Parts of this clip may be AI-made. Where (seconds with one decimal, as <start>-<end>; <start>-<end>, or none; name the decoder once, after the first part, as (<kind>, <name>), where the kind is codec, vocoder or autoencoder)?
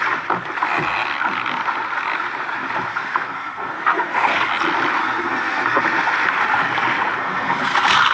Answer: 2.9-4.5 (codec, SNAC); 5.0-5.8; 7.2-8.1